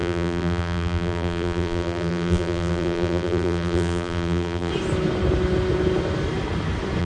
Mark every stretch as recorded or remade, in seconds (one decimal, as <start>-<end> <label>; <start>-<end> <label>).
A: 0.0-4.7 remade; 4.7-7.0 recorded